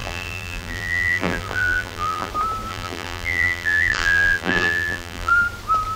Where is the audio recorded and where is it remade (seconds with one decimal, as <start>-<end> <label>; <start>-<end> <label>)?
0.0-2.3 remade; 2.3-2.7 recorded; 2.7-5.3 remade; 5.3-6.0 recorded